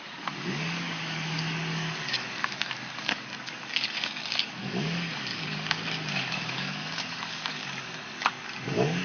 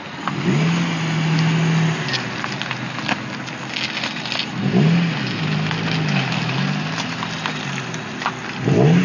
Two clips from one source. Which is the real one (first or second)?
second